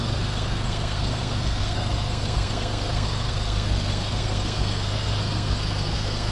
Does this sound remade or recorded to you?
remade